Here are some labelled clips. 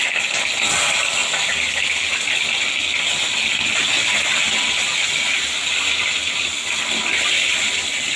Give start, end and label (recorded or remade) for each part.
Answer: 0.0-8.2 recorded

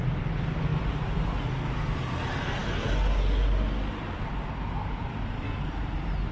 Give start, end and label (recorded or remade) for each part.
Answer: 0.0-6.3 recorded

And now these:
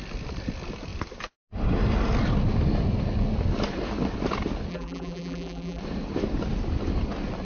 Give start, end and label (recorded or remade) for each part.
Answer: 0.0-4.7 recorded; 4.7-5.8 remade; 5.8-7.4 recorded

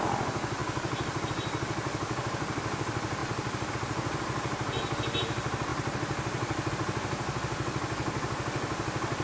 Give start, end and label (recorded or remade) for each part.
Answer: 0.0-0.6 recorded; 0.6-1.3 remade; 1.3-5.7 recorded; 5.7-6.7 remade; 6.7-9.2 recorded